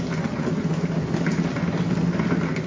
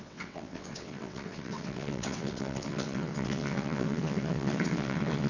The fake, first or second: second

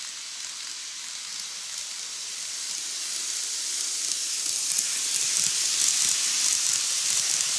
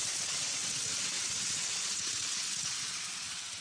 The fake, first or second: second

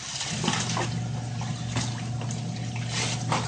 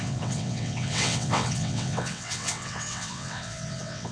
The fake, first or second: second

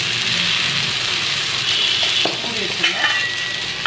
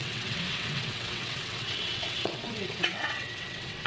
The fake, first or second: second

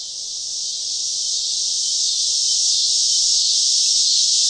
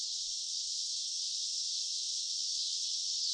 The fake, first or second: second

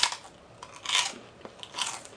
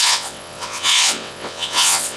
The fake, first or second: second